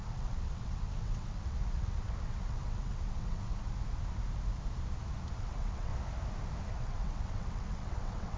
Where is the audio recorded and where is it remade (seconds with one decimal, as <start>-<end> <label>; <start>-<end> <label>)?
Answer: 0.0-3.5 remade; 3.5-5.4 recorded; 5.4-5.9 remade; 5.9-6.7 recorded; 6.7-8.4 remade